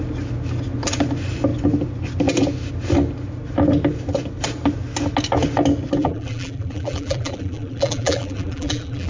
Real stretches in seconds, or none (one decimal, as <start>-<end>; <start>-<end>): 0.0-6.0